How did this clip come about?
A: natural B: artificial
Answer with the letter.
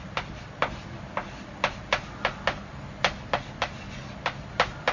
A